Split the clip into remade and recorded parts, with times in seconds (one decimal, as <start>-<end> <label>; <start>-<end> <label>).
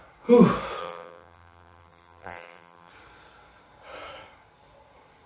0.0-0.8 recorded; 0.8-2.9 remade; 2.9-5.3 recorded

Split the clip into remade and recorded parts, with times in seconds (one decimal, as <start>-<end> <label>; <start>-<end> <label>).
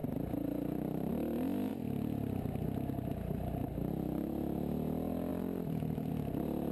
0.0-1.1 remade; 1.1-5.3 recorded; 5.3-6.1 remade; 6.1-6.7 recorded